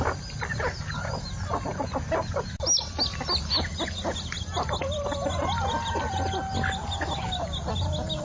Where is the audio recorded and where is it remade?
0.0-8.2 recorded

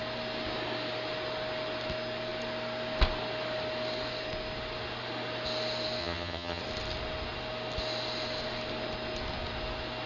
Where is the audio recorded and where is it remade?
0.0-6.0 recorded; 6.0-6.6 remade; 6.6-10.1 recorded

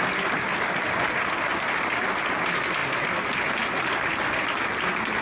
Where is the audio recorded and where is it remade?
0.0-5.2 recorded

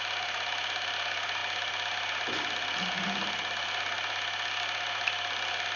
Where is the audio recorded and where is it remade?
0.0-5.8 recorded

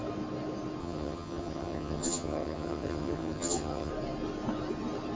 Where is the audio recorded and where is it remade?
0.0-0.8 recorded; 0.8-3.9 remade; 3.9-5.2 recorded

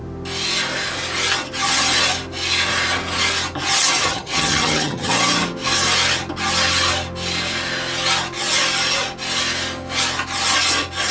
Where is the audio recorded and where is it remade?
0.0-4.0 recorded; 4.0-5.1 remade; 5.1-11.1 recorded